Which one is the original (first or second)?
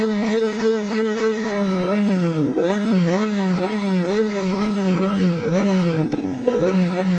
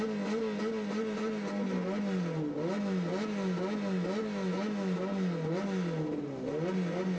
second